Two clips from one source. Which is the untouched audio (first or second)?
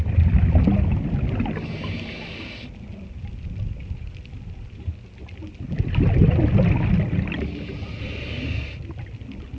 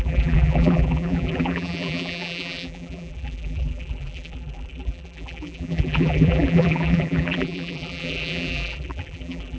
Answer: first